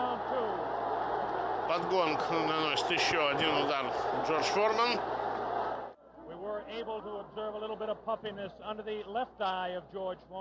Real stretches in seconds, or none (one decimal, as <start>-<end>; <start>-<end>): 0.0-10.4

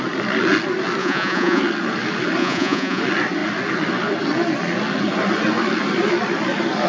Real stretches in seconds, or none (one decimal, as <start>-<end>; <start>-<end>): 0.0-1.0; 1.6-2.4; 3.0-6.9

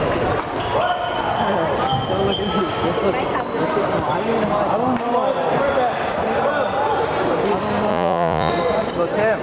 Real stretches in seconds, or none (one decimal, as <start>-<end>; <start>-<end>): 0.0-7.9; 8.5-9.4

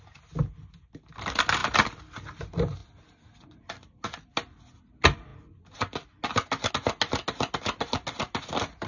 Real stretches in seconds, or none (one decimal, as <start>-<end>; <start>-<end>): 0.0-8.9